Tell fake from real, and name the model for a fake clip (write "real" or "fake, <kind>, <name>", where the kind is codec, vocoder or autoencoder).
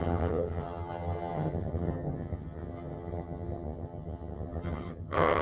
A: fake, vocoder, HiFi-GAN